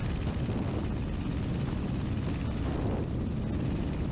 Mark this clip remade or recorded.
recorded